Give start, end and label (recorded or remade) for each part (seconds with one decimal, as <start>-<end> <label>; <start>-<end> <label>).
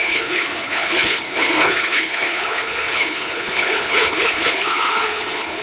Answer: 0.0-5.6 remade